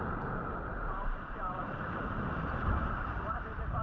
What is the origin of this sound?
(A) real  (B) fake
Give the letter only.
B